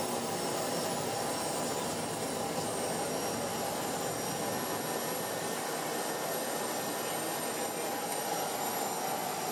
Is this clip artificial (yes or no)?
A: no